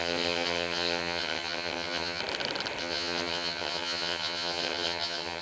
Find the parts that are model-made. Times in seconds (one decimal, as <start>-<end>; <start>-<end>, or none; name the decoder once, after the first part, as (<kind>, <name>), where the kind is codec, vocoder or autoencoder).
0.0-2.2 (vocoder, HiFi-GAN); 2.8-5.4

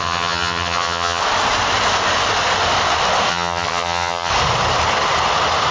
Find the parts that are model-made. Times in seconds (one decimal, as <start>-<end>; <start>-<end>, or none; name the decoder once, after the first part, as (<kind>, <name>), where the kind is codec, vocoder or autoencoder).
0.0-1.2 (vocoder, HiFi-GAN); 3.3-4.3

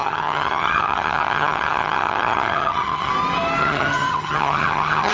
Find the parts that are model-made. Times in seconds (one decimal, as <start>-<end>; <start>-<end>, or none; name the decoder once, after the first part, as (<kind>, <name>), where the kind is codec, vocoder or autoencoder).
0.0-3.1 (vocoder, HiFi-GAN); 3.6-5.1

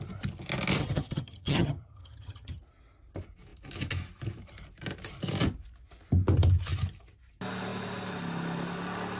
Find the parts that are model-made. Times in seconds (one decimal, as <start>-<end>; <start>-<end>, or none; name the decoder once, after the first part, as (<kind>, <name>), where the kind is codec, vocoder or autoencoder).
0.8-2.6 (vocoder, HiFi-GAN)

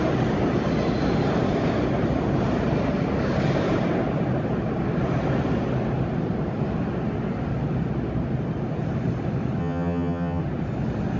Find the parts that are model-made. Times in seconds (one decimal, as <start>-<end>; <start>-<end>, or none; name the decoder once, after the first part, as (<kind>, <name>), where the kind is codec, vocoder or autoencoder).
9.6-10.4 (vocoder, HiFi-GAN)

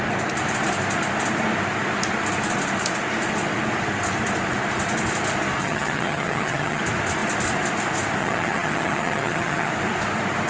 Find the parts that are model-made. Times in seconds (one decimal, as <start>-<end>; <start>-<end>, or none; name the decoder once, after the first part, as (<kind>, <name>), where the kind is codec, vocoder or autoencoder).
5.6-6.8 (vocoder, HiFi-GAN); 8.2-9.7